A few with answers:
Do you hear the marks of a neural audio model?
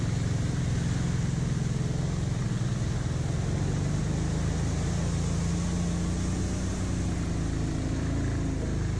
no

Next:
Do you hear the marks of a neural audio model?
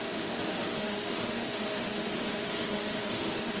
yes